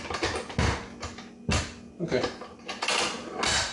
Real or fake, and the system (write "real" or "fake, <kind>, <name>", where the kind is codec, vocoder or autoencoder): real